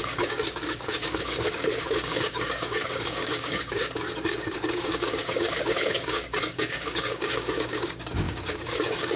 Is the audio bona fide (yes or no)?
no